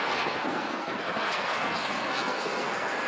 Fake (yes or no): yes